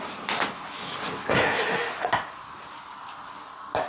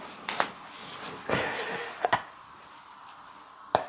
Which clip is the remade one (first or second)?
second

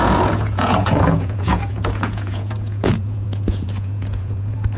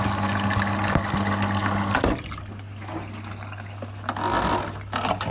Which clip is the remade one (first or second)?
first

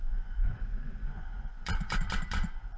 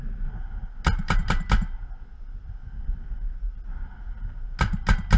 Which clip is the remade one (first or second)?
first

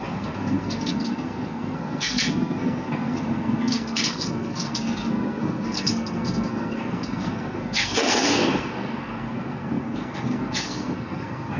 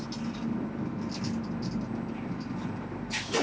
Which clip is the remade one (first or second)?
first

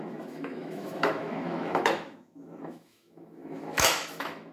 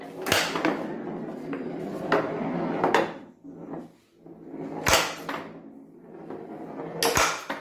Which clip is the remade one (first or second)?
first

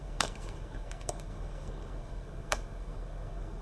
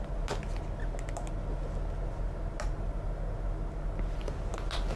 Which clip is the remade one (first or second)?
first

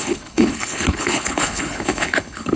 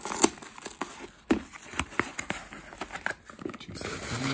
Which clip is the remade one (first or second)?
first